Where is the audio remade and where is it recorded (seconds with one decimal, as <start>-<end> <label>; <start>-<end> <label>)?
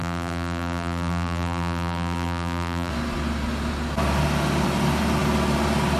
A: 0.0-2.9 remade; 2.9-6.0 recorded